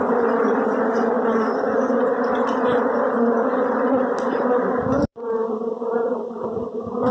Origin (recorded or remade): remade